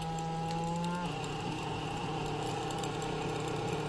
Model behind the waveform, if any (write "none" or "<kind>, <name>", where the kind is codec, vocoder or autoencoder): none